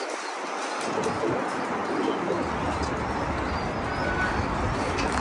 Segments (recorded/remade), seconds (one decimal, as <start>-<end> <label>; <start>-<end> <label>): 0.0-5.2 recorded